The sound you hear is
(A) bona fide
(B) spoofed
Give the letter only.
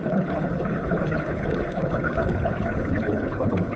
B